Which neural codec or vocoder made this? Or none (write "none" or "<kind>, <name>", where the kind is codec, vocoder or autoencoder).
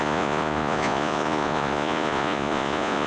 vocoder, Vocos